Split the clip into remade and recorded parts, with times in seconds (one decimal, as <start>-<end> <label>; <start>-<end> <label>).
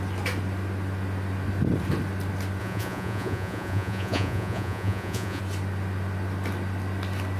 0.0-2.6 recorded; 2.6-5.4 remade; 5.4-7.4 recorded